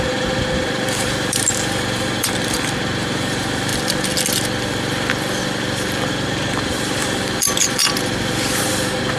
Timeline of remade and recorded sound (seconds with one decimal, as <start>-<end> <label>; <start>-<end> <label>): 0.0-3.7 remade; 3.7-6.1 recorded; 6.1-7.8 remade; 7.8-8.6 recorded; 8.6-9.2 remade